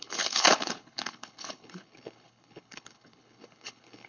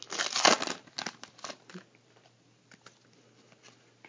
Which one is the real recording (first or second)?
second